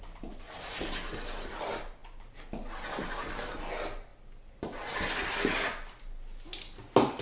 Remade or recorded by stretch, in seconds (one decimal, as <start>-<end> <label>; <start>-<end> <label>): 0.0-7.2 recorded